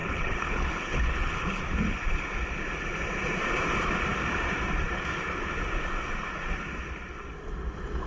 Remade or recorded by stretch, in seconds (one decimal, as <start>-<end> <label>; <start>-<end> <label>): 0.0-1.6 remade; 1.6-8.1 recorded